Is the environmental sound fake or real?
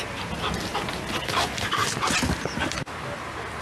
real